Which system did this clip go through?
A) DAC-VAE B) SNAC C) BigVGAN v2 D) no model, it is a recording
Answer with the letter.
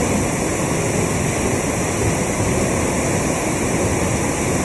D